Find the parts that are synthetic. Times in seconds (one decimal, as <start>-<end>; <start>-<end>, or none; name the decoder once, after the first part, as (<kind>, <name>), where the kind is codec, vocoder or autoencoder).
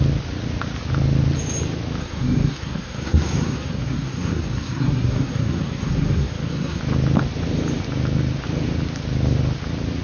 2.0-6.8 (codec, SNAC)